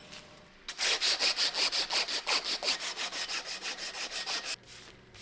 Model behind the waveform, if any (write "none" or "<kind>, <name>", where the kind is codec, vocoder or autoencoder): none